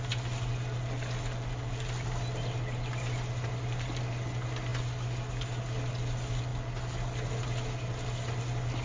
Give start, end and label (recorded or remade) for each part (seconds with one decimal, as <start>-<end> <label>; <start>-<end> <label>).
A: 0.0-8.8 recorded